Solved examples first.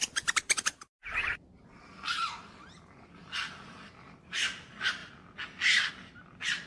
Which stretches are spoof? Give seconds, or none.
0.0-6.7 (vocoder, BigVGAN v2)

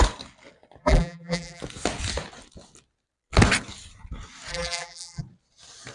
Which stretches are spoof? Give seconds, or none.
0.8-1.6 (vocoder, BigVGAN v2); 4.5-5.2

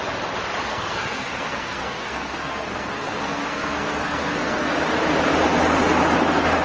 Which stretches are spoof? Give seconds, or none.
0.7-4.7 (codec, SNAC)

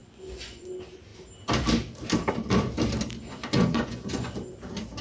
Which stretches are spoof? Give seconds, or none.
0.0-0.7 (vocoder, Vocos); 3.4-4.4

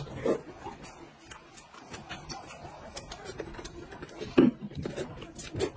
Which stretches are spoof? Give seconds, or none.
2.9-5.8 (vocoder, BigVGAN v2)

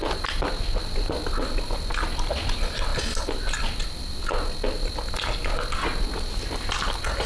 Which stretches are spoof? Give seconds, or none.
none

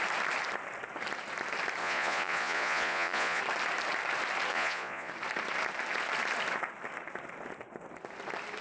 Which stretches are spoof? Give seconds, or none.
1.8-3.4 (vocoder, Vocos); 4.5-5.1

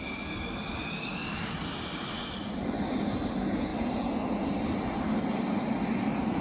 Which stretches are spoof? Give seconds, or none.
none